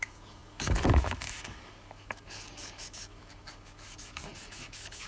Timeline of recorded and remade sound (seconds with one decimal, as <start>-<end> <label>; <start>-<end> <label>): 0.0-5.1 remade